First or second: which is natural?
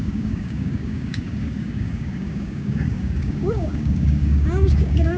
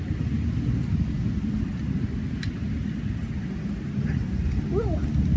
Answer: second